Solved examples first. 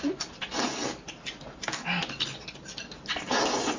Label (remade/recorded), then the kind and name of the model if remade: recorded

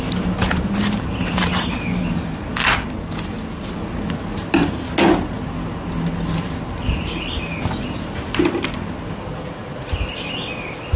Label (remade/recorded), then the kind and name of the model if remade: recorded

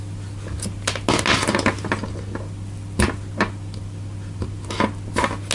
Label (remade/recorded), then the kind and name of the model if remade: recorded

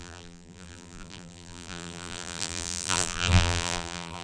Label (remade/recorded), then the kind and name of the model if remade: remade, vocoder, BigVGAN v2